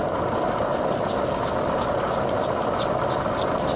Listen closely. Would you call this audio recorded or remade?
recorded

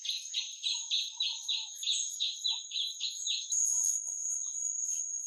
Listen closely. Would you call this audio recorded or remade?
recorded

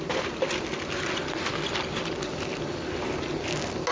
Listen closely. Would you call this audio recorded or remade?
recorded